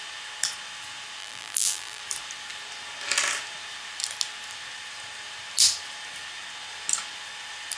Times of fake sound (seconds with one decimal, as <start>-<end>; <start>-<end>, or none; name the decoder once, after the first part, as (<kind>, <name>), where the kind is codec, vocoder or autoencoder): 1.2-2.0 (vocoder, BigVGAN v2)